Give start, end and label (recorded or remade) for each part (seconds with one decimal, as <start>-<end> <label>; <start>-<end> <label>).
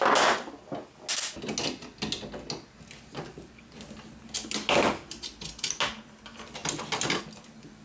0.0-7.8 recorded